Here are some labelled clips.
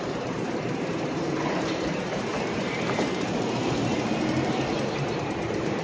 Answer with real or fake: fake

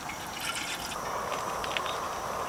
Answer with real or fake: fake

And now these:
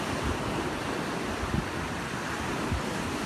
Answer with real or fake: fake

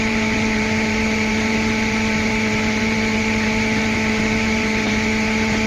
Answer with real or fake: fake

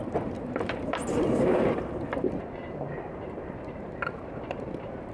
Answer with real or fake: fake